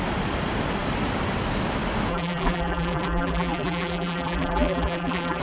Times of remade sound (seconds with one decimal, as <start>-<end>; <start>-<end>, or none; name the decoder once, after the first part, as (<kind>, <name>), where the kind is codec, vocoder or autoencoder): 2.1-5.4 (vocoder, BigVGAN v2)